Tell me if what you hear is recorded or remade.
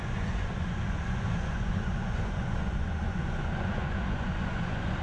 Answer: remade